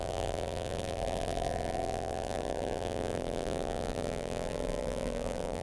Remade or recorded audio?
remade